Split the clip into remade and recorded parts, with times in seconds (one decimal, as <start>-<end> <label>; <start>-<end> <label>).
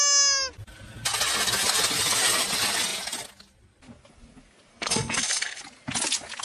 0.0-4.7 recorded; 4.7-5.6 remade; 5.6-6.4 recorded